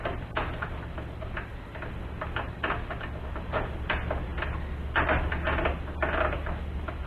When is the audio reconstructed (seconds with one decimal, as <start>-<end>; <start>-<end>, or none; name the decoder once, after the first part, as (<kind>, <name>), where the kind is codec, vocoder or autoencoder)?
none